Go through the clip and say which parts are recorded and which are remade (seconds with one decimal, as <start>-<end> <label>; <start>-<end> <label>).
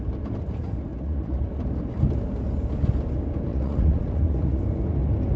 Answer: 0.0-0.9 recorded; 0.9-1.5 remade; 1.5-3.5 recorded; 3.5-4.6 remade; 4.6-5.4 recorded